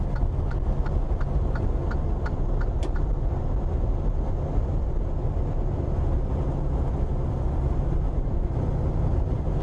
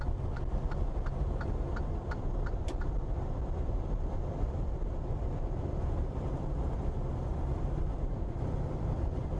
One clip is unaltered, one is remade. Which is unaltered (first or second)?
first